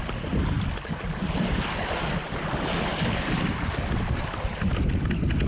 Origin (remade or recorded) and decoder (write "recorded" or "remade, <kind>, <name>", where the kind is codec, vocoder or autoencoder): recorded